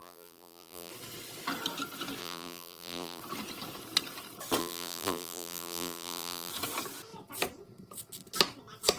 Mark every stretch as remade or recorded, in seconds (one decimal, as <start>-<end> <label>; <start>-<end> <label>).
0.0-0.9 remade; 0.9-2.2 recorded; 2.2-3.2 remade; 3.2-4.6 recorded; 4.6-6.5 remade; 6.5-9.0 recorded